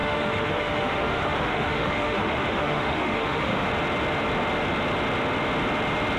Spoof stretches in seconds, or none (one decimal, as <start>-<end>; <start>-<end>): 0.0-3.7